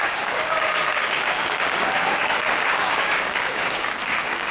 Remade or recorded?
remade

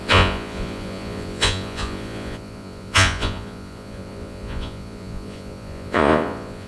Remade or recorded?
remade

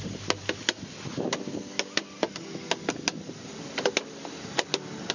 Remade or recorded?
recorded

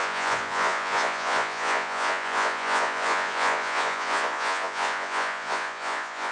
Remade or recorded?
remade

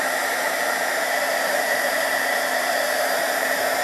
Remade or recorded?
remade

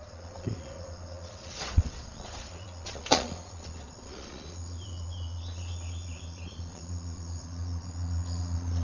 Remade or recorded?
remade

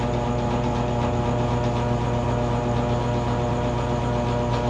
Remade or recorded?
recorded